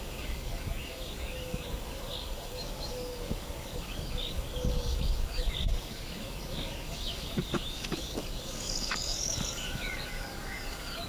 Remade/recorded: remade